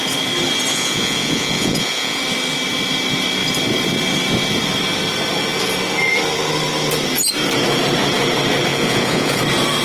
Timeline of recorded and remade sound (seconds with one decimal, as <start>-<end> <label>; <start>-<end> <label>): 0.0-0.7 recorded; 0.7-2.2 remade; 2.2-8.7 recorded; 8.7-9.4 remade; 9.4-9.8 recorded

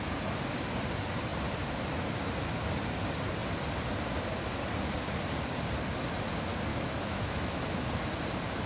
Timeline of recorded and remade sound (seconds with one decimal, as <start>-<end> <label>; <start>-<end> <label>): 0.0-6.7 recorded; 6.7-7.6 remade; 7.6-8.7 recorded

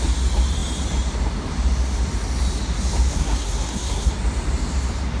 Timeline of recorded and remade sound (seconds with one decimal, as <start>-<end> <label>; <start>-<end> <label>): 0.0-3.1 recorded; 3.1-4.1 remade; 4.1-5.2 recorded